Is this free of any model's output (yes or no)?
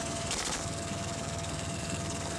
no